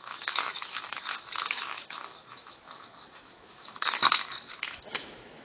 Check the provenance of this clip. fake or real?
fake